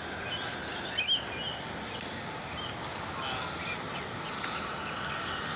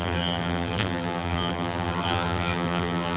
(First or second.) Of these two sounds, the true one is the first